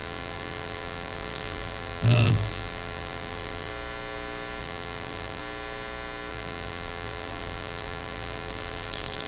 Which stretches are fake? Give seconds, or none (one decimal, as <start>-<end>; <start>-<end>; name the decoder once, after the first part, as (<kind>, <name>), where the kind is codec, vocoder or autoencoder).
0.0-3.7 (vocoder, BigVGAN v2); 4.6-5.4; 6.3-9.3